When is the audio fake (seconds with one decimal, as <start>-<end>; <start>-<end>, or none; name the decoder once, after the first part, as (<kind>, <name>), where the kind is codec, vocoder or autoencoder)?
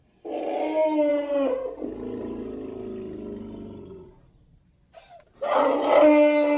none